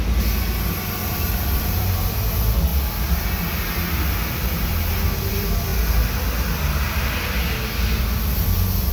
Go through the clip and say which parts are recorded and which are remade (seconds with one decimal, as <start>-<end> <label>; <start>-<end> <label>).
0.0-1.0 recorded; 1.0-1.9 remade; 1.9-8.9 recorded